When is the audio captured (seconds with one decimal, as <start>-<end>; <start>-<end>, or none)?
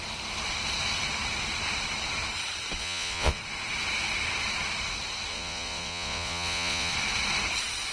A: 0.0-2.8; 3.4-5.3; 6.9-7.9